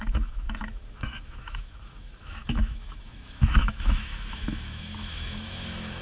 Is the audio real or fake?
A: fake